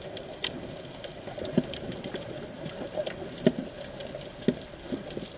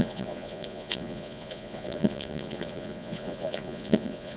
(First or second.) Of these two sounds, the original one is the first